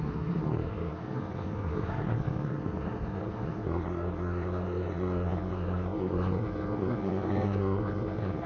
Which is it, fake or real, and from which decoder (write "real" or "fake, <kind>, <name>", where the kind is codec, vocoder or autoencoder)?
fake, codec, SNAC